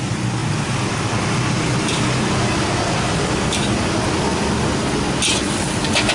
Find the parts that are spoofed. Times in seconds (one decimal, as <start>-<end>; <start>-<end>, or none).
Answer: none